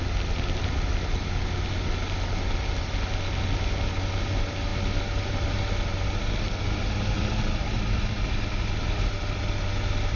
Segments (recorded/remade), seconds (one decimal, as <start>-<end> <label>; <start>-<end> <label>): 0.0-10.2 recorded